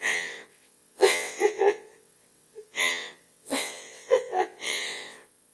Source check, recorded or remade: remade